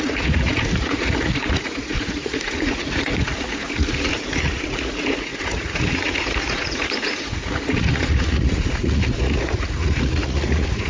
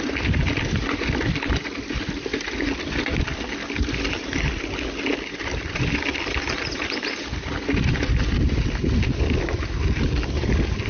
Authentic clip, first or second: second